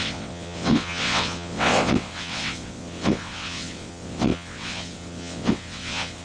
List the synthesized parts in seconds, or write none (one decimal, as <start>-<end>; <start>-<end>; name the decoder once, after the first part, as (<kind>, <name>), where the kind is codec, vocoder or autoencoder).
0.0-6.2 (vocoder, WaveNeXt)